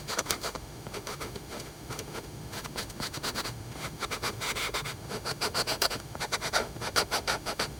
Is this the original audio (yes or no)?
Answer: no